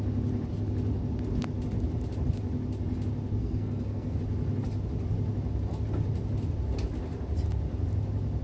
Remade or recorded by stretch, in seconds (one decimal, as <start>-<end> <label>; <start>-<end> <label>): 0.0-3.4 recorded; 3.4-4.2 remade; 4.2-8.4 recorded